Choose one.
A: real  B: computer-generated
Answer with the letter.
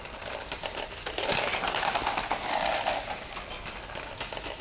A